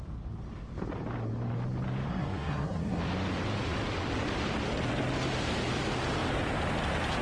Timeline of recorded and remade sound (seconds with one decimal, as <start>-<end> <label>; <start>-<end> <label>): 0.0-2.1 recorded; 2.1-3.0 remade; 3.0-7.2 recorded